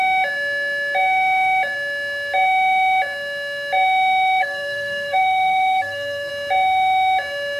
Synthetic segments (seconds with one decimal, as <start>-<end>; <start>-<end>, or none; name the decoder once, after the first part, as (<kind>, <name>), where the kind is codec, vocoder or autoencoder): 4.4-6.3 (codec, SNAC)